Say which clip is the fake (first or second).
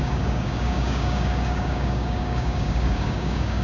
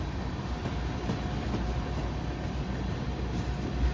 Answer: first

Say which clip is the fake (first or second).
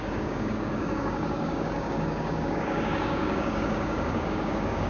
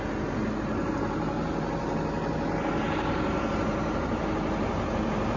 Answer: first